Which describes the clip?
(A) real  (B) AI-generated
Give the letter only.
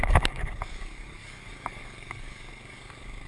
B